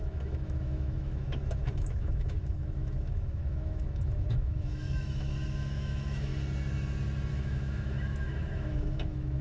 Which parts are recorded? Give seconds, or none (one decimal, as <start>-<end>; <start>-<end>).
6.3-7.3